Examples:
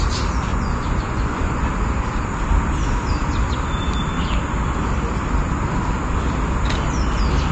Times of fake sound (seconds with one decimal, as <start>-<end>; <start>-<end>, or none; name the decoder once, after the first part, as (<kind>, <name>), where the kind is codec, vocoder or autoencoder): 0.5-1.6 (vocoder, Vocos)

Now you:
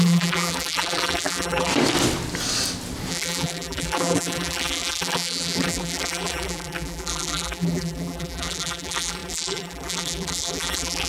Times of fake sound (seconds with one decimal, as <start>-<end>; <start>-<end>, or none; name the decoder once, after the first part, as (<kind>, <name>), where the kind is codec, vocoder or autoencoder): 0.0-1.7 (vocoder, BigVGAN v2); 3.1-11.1

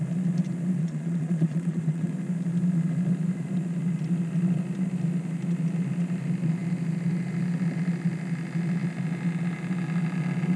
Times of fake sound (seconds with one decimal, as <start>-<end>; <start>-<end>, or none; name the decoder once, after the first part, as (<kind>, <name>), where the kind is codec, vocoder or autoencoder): 0.8-2.1 (vocoder, Vocos)

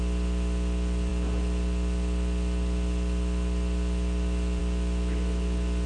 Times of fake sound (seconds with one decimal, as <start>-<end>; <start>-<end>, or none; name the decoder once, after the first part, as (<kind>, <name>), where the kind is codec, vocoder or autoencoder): none

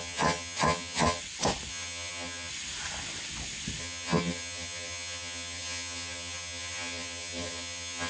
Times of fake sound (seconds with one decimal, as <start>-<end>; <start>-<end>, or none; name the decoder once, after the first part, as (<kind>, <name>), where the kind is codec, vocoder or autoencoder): 0.0-1.2 (vocoder, HiFi-GAN); 1.7-2.5; 3.8-8.1

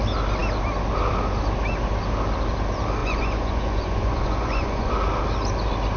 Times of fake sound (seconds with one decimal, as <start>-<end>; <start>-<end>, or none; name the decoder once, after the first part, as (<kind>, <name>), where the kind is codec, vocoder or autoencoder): 3.0-4.9 (vocoder, Vocos)

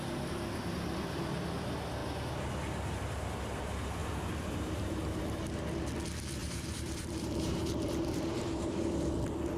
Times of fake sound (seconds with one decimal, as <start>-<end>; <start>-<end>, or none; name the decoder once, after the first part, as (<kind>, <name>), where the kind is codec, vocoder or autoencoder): 4.0-5.2 (vocoder, BigVGAN v2); 6.4-8.9